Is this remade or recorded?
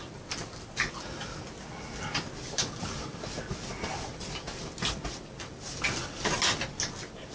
recorded